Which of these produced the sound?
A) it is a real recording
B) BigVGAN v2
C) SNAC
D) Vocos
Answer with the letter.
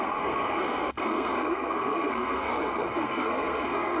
C